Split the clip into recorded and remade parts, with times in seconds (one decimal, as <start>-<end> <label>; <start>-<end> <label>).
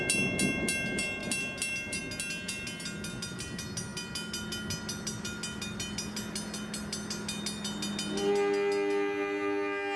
0.0-10.0 recorded